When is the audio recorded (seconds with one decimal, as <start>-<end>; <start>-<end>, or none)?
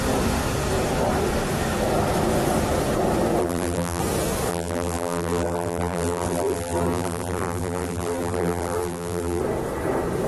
0.0-3.4; 4.0-4.5; 9.4-10.3